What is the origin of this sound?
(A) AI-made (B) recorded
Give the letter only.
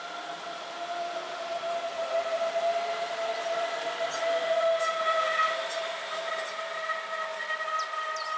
B